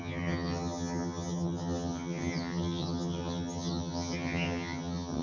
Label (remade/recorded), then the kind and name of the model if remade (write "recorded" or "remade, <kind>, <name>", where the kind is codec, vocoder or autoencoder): remade, vocoder, HiFi-GAN